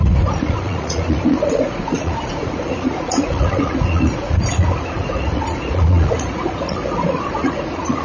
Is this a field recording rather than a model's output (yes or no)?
no